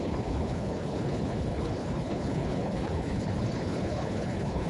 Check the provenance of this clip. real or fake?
fake